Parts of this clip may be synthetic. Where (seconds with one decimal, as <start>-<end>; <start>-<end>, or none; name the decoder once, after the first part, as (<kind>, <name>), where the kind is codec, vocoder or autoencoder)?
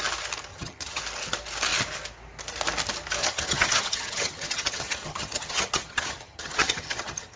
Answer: 0.5-1.0 (vocoder, HiFi-GAN); 3.2-7.4